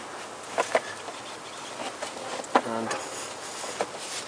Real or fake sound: real